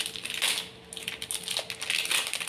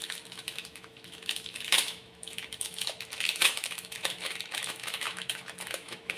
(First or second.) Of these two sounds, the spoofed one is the second